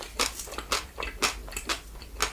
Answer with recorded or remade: recorded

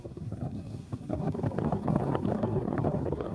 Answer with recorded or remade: remade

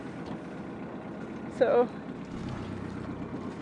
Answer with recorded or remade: recorded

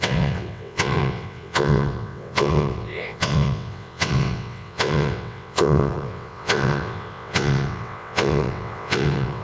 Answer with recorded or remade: remade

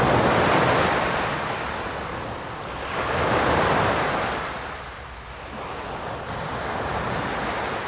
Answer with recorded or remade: recorded